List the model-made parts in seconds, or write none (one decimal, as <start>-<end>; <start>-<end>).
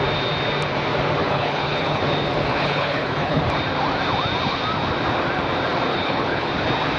1.2-2.0; 2.5-3.4; 5.9-6.5